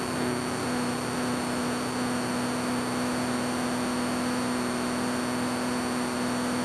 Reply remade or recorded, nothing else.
recorded